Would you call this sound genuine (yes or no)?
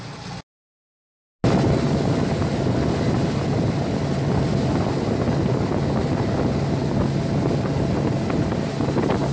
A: yes